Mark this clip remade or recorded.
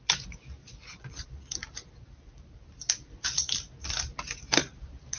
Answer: remade